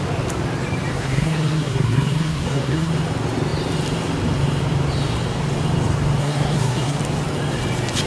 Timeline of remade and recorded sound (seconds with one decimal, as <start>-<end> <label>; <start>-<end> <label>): 0.0-0.9 recorded; 0.9-2.9 remade; 2.9-6.2 recorded; 6.2-7.0 remade; 7.0-8.1 recorded